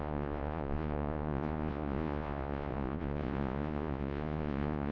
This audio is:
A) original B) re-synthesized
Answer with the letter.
B